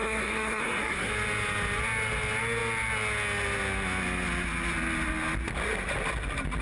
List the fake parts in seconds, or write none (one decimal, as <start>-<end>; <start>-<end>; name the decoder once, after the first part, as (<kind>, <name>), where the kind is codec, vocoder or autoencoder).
0.0-1.1 (codec, SNAC)